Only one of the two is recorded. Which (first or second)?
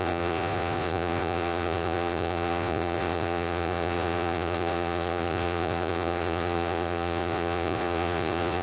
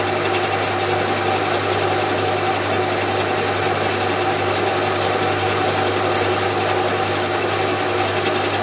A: second